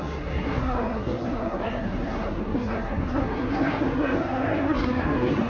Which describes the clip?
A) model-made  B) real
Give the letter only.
A